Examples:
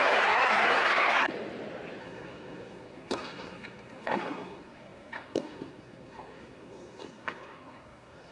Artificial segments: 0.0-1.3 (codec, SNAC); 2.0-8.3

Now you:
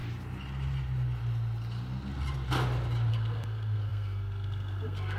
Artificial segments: 3.1-5.2 (codec, SNAC)

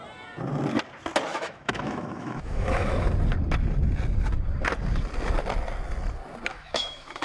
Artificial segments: 1.3-3.1 (autoencoder, DAC-VAE); 6.5-7.2

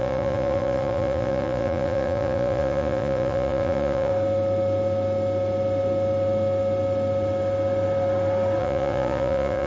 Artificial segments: 0.0-4.1 (vocoder, Vocos); 8.6-9.7

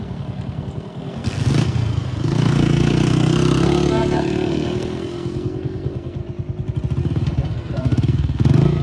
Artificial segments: 0.0-6.2 (codec, SNAC); 7.0-8.8